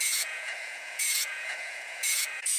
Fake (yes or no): yes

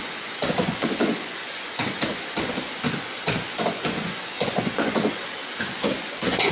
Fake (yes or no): yes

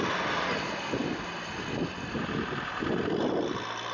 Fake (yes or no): no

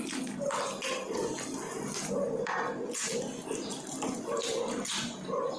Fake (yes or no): no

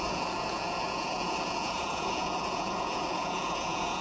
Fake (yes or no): yes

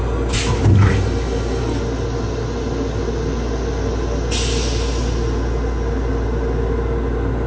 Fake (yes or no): no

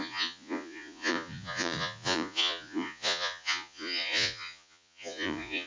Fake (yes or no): yes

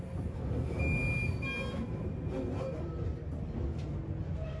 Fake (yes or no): no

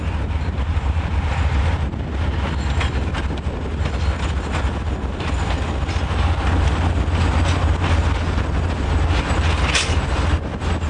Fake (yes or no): no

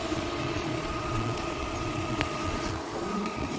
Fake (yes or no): yes